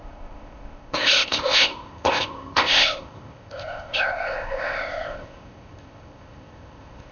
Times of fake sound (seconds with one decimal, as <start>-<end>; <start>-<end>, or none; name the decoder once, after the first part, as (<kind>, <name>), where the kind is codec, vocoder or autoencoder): 0.0-7.1 (codec, ZipCodec)